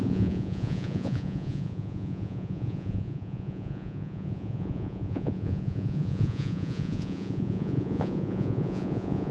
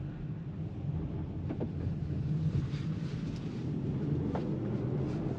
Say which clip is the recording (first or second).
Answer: second